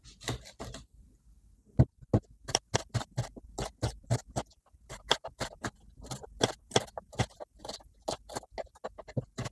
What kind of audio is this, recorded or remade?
recorded